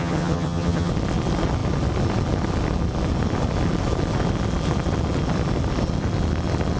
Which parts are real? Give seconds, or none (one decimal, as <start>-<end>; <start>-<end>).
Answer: 0.9-6.8